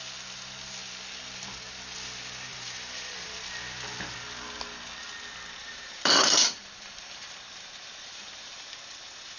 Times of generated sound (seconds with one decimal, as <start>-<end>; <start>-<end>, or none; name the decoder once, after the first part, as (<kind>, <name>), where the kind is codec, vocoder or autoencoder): 2.5-3.6 (vocoder, BigVGAN v2); 5.6-9.4